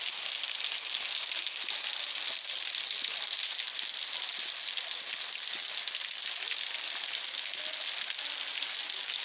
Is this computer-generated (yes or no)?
no